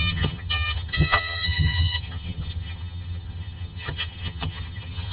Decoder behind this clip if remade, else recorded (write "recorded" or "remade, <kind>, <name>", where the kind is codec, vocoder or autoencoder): remade, vocoder, HiFi-GAN